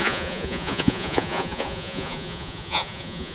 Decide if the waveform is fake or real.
fake